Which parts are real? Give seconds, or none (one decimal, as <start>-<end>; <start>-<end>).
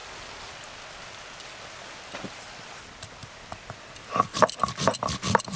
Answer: 0.0-5.6